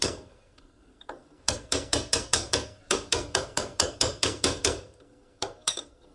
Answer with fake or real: fake